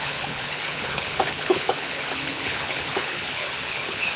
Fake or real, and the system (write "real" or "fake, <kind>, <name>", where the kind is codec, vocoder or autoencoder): fake, codec, HILCodec